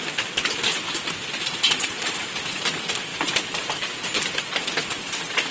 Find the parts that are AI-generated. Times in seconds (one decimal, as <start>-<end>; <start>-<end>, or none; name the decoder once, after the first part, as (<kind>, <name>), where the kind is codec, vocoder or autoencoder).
none